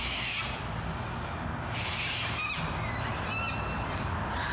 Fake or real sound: real